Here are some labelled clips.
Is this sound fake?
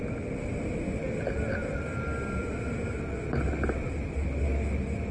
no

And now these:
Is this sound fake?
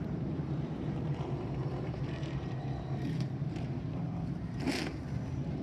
yes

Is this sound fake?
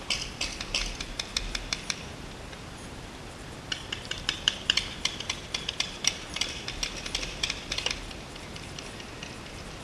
yes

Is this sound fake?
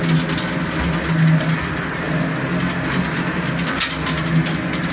no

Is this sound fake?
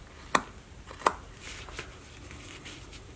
no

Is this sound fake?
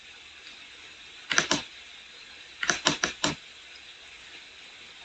no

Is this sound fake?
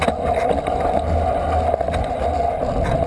no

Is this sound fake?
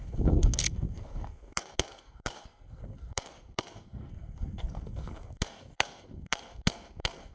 yes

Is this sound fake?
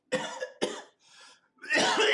no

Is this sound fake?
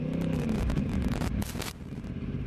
yes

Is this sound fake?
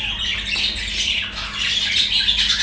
no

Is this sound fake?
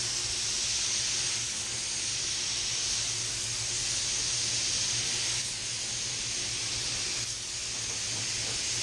no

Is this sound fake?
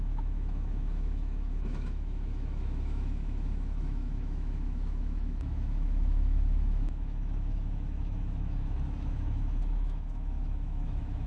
yes